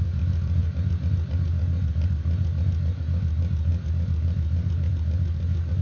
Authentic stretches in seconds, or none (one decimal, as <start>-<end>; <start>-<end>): 0.0-5.8